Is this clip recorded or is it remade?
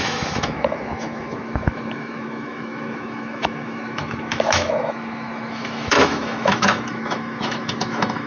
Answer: remade